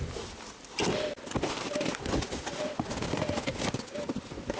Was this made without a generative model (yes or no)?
yes